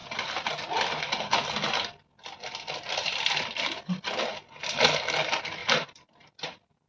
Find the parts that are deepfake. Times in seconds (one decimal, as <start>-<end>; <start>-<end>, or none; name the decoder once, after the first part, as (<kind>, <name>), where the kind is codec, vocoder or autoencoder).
5.6-6.1 (vocoder, BigVGAN v2)

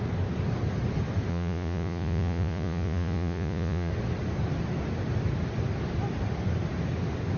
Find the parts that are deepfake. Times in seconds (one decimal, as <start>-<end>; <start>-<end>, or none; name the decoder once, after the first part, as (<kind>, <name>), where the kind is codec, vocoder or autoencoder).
1.3-3.9 (vocoder, Vocos)

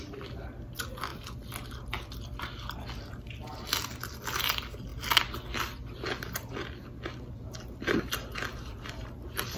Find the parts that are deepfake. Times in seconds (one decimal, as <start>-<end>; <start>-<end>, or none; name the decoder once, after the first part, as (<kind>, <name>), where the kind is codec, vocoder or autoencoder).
none

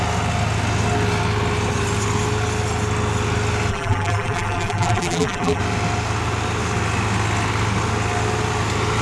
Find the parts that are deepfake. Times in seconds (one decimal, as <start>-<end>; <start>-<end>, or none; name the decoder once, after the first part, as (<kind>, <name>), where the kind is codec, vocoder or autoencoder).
3.7-5.6 (vocoder, BigVGAN v2)

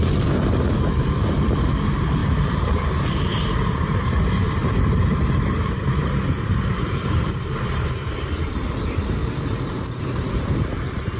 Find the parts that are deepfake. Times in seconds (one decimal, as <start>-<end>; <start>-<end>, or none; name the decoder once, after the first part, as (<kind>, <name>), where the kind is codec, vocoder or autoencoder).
0.0-11.2 (vocoder, BigVGAN v2)

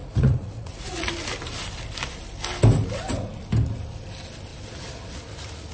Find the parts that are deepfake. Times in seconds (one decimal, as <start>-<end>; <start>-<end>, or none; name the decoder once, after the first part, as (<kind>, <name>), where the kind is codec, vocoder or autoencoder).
0.0-1.1 (vocoder, Vocos)